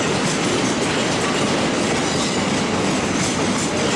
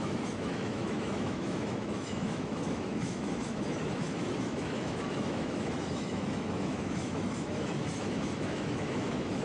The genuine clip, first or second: first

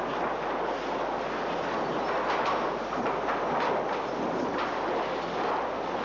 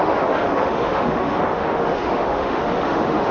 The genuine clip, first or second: first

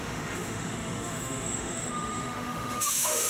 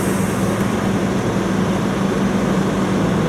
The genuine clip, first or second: second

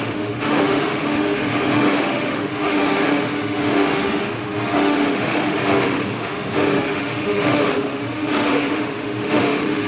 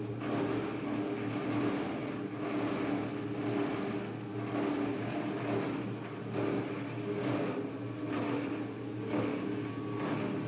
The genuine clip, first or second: second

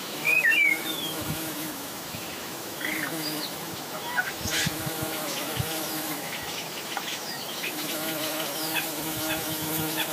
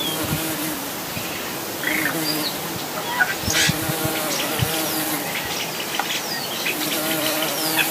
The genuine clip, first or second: second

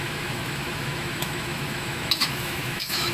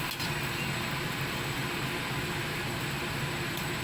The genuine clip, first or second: second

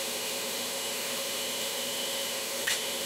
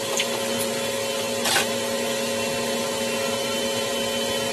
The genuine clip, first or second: second